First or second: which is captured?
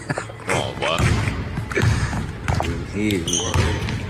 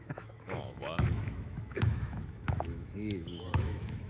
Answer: first